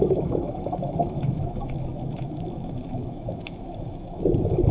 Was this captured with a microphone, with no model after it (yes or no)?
no